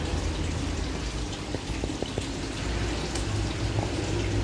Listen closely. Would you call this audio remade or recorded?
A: recorded